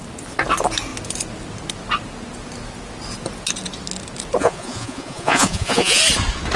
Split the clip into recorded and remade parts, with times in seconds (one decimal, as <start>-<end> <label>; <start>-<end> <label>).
0.0-4.4 recorded; 4.4-6.0 remade; 6.0-6.6 recorded